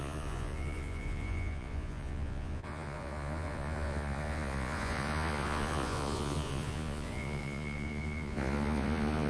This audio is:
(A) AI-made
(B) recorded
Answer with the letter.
A